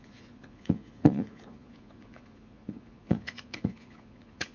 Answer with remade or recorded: remade